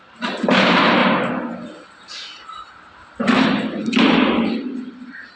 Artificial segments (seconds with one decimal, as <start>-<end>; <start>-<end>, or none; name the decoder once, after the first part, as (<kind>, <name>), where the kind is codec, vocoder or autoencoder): none